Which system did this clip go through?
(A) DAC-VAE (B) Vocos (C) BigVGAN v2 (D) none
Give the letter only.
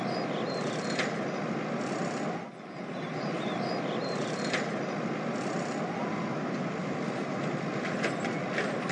D